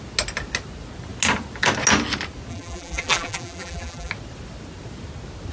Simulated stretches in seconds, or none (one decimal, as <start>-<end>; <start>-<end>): 2.5-4.1